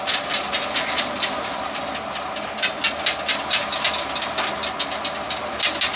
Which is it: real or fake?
real